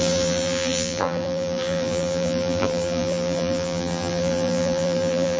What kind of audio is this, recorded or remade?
remade